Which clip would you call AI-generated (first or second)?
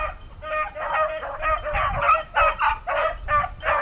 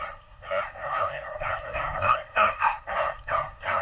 second